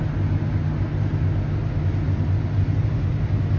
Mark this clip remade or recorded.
recorded